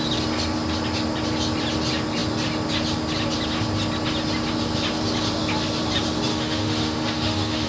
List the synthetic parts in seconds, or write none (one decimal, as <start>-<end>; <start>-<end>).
6.3-7.7